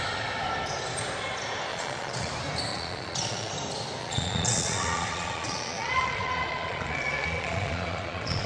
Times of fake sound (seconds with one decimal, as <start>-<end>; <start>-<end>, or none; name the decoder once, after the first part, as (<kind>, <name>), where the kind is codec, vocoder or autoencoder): 1.7-2.3 (vocoder, Vocos); 2.7-3.5; 4.0-8.5